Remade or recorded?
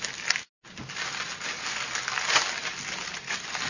recorded